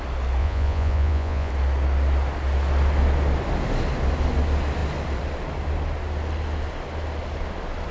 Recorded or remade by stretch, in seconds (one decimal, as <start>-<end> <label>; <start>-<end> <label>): 0.0-0.4 recorded; 0.4-1.5 remade; 1.5-7.9 recorded